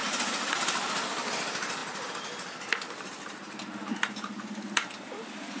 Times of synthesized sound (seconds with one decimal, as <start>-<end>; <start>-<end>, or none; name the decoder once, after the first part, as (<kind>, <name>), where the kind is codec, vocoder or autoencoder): none